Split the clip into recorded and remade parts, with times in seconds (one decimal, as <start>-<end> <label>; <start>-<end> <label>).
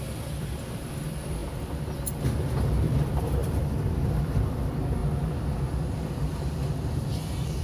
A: 0.0-1.4 remade; 1.4-2.6 recorded; 2.6-5.0 remade; 5.0-5.9 recorded; 5.9-7.6 remade